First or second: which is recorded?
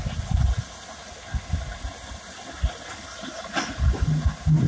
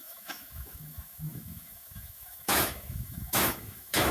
first